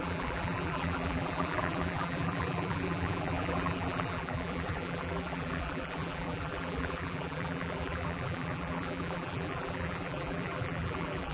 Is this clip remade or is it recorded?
remade